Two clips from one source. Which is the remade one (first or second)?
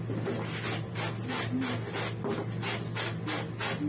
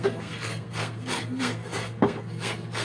second